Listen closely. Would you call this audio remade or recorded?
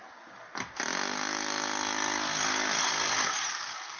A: recorded